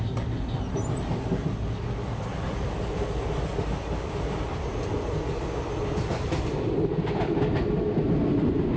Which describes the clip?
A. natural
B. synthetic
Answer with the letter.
A